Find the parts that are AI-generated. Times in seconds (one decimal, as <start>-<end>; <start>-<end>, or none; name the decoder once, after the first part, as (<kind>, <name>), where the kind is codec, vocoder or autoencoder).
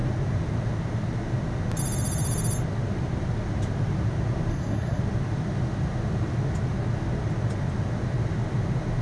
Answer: 4.5-5.0 (codec, SNAC)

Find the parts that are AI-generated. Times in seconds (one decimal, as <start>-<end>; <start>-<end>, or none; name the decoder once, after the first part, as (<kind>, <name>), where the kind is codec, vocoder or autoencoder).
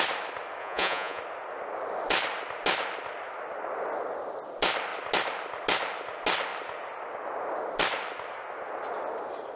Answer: 0.6-1.2 (vocoder, Vocos)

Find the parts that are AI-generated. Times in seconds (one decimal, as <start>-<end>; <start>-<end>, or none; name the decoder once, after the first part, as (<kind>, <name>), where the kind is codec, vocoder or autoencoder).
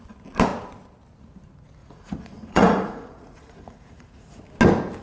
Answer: 1.8-4.4 (vocoder, Vocos)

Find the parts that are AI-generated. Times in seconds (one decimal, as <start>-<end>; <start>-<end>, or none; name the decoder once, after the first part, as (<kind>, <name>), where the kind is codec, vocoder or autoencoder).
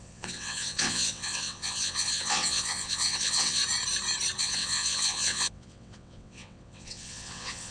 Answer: 0.0-3.6 (vocoder, WaveNeXt); 4.4-7.7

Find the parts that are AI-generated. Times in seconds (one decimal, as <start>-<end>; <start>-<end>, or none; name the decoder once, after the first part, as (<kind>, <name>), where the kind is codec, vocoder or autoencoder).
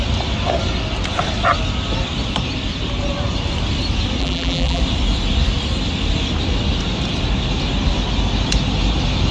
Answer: 4.2-4.8 (vocoder, BigVGAN v2)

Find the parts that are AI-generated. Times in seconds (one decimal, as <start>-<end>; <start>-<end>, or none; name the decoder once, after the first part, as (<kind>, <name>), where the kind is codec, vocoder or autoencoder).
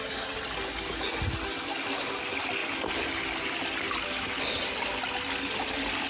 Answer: none